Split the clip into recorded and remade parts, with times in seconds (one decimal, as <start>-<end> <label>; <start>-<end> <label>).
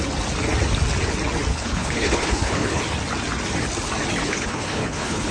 0.0-1.5 recorded; 1.5-2.8 remade; 2.8-4.2 recorded; 4.2-5.3 remade